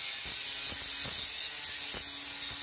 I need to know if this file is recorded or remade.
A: recorded